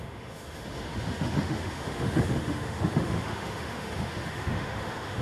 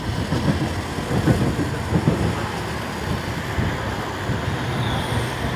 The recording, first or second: second